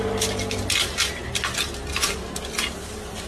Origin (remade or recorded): recorded